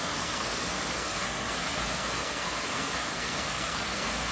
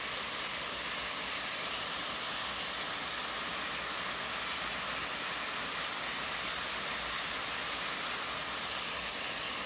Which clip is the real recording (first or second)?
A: second